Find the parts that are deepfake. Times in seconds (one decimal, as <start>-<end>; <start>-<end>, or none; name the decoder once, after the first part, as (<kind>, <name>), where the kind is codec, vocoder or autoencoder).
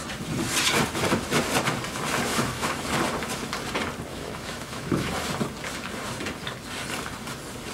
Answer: 2.3-2.8 (autoencoder, DAC-VAE); 4.1-5.1